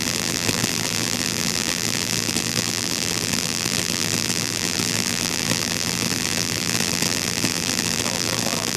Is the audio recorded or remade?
remade